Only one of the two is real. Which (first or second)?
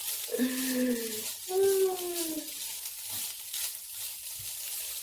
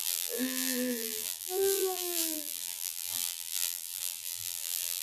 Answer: first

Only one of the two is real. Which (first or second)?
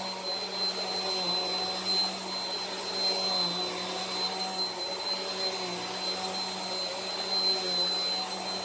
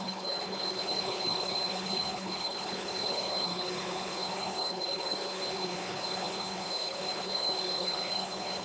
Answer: first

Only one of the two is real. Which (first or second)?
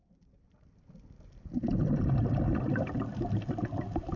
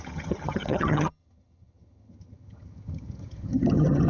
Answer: first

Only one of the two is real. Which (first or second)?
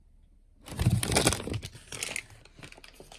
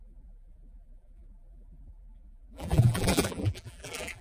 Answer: first